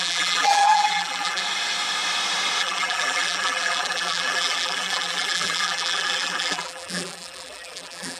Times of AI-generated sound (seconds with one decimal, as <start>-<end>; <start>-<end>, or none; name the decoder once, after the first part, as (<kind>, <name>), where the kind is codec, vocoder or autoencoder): 0.0-1.4 (vocoder, BigVGAN v2); 2.6-8.2